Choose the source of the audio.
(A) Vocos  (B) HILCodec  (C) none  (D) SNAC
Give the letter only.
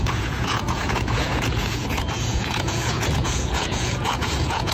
A